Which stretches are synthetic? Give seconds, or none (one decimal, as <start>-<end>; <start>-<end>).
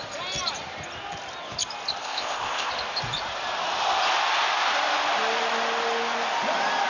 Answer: 2.0-2.7